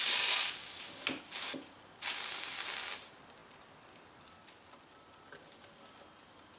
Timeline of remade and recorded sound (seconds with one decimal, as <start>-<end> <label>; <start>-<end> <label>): 0.0-6.6 recorded